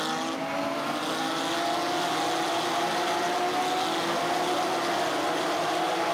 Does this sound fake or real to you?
real